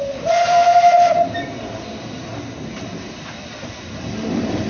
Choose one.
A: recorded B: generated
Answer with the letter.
A